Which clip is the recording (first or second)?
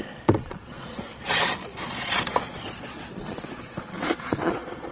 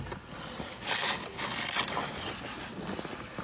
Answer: second